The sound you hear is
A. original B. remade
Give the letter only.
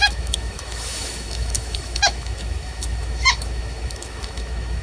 B